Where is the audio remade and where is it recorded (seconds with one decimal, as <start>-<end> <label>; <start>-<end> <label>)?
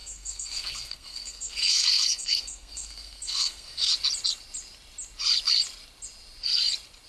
0.0-3.9 remade; 3.9-7.1 recorded